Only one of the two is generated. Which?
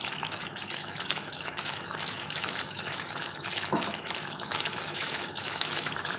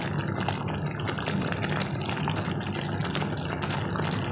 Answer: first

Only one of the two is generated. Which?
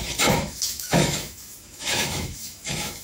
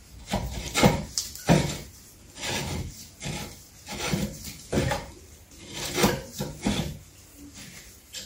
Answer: first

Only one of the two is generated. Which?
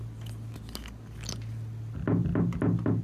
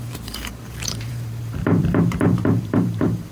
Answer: second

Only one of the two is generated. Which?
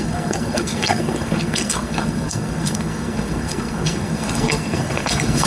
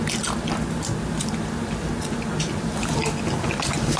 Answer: first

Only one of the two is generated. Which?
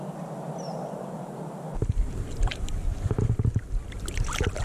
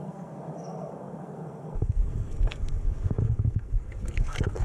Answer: second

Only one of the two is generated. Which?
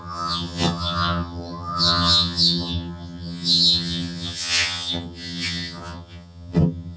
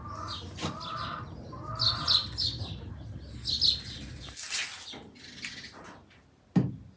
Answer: first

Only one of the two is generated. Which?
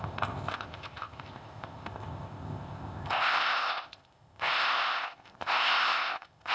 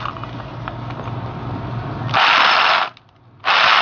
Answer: first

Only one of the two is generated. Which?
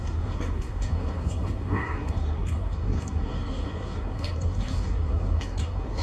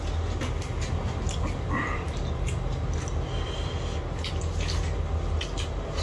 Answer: first